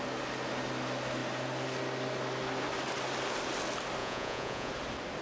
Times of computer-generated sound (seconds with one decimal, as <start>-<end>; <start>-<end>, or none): 4.0-4.7